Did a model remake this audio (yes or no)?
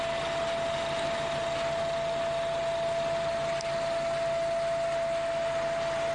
no